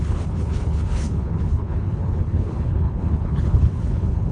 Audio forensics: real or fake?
fake